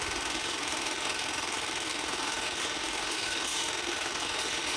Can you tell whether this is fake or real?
fake